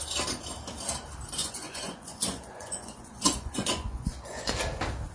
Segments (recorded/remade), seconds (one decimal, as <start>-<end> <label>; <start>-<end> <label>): 0.0-1.4 recorded; 1.4-4.5 remade; 4.5-5.1 recorded